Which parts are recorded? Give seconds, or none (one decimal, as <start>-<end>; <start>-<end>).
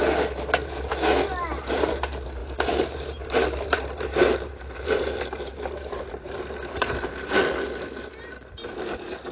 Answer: 0.9-1.7; 7.1-8.7